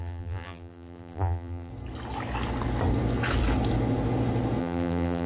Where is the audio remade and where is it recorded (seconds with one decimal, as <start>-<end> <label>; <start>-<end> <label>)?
0.0-1.7 remade; 1.7-4.6 recorded; 4.6-5.3 remade